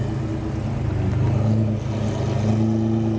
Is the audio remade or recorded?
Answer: recorded